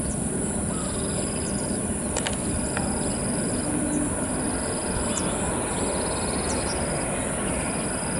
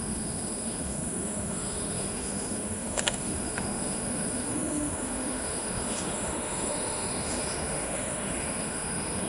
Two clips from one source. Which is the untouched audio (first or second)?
first